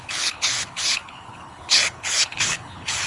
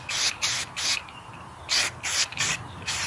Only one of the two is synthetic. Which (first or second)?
first